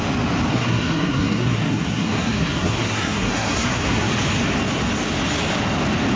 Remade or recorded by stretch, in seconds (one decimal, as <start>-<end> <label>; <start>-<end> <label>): 0.0-0.5 recorded; 0.5-4.1 remade; 4.1-6.2 recorded